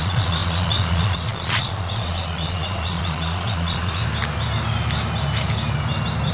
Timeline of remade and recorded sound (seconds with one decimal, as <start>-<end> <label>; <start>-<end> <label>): 0.0-4.0 remade; 4.0-6.3 recorded